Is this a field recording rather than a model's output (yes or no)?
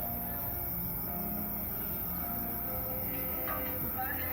yes